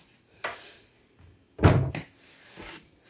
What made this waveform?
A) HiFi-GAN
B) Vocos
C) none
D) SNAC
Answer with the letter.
C